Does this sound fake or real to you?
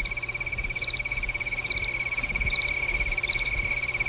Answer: real